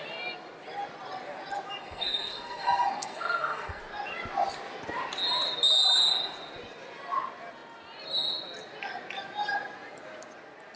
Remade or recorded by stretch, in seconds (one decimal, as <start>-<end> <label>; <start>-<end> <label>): 0.0-1.8 recorded; 1.8-3.8 remade; 3.8-10.8 recorded